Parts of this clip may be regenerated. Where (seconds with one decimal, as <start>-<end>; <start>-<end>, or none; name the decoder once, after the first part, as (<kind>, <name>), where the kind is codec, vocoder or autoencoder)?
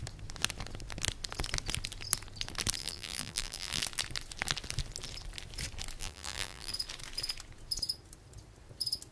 2.8-3.8 (vocoder, BigVGAN v2); 6.0-6.7